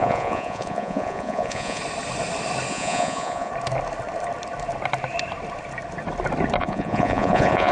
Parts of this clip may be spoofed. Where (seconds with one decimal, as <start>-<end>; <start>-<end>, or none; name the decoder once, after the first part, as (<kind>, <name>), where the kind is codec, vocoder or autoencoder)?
0.0-1.8 (vocoder, Vocos); 2.7-3.5; 6.6-7.7